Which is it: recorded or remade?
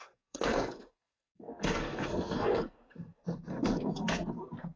remade